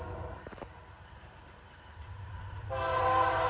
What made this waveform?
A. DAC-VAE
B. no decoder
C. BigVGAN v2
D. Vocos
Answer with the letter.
C